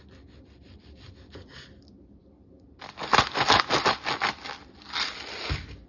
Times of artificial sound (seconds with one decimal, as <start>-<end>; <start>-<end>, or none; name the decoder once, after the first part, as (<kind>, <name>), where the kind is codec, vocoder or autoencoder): none